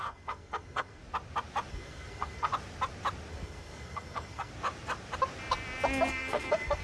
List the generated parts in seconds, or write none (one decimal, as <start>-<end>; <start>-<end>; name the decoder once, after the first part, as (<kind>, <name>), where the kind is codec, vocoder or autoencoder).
0.0-1.0 (codec, SNAC); 1.7-2.5; 3.3-4.5; 6.1-6.8